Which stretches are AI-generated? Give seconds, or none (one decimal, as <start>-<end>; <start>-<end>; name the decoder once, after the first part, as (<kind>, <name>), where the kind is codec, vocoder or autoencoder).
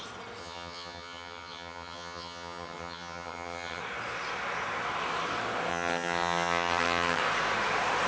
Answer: 0.4-3.8 (vocoder, HiFi-GAN); 5.7-7.2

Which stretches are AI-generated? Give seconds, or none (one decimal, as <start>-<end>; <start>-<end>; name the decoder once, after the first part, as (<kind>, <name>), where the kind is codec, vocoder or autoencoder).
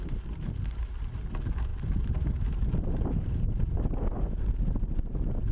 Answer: none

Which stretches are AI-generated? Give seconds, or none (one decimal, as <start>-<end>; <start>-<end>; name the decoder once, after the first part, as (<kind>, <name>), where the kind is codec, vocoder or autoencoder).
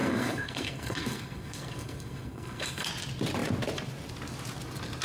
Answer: 0.0-2.9 (codec, SNAC)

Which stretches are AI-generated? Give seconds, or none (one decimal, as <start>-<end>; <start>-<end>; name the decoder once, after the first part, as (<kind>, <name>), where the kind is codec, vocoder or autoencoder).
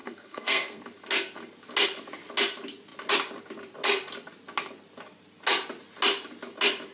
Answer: 0.0-0.8 (codec, SNAC)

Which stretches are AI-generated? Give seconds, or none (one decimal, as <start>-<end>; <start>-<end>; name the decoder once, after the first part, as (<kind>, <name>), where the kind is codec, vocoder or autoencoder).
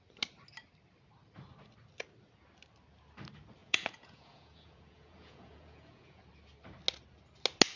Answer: 3.6-6.2 (vocoder, Vocos)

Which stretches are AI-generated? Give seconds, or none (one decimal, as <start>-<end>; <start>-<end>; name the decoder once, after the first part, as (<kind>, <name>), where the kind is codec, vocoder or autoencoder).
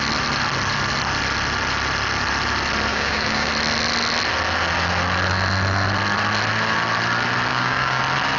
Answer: 2.9-3.5 (codec, DAC); 7.5-8.0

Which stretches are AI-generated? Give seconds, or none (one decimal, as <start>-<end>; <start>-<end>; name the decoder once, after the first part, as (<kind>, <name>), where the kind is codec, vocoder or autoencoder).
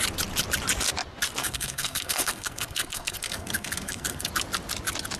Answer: 1.4-4.3 (codec, SNAC)